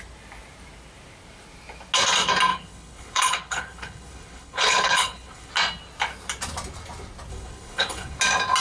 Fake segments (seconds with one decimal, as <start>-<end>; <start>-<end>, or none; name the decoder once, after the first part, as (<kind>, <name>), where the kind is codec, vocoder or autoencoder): 2.5-5.5 (codec, HILCodec); 7.3-8.2